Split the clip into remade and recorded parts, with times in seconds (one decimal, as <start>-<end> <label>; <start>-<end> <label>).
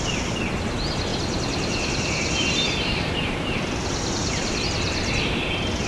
0.0-1.1 recorded; 1.1-4.6 remade; 4.6-5.9 recorded